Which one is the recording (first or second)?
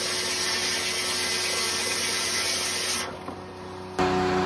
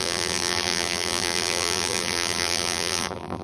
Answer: first